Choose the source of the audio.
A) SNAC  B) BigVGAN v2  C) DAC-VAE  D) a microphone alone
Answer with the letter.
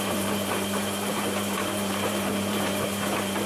B